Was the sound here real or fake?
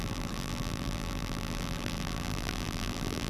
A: fake